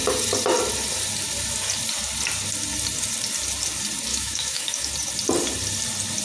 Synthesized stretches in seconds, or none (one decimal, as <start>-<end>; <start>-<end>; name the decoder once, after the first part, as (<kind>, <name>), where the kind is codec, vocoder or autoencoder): 4.1-4.9 (autoencoder, DAC-VAE)